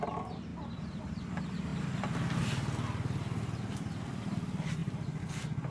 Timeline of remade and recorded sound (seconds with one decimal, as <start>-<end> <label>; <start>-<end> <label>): 0.0-5.7 remade